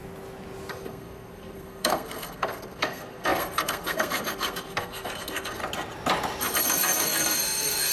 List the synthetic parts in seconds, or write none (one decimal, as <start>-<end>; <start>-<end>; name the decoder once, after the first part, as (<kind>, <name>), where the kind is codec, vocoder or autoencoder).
0.7-5.6 (codec, SNAC); 6.6-7.9